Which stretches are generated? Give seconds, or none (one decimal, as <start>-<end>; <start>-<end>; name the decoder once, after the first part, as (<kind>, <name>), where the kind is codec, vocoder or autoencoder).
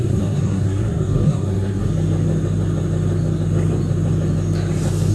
0.0-1.9 (codec, SNAC)